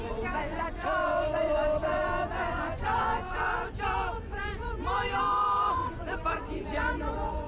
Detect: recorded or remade remade